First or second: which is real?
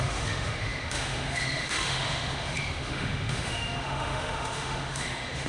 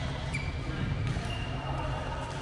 second